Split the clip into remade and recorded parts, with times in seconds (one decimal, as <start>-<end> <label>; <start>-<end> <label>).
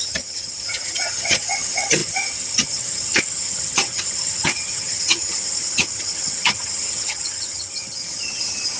0.0-8.8 remade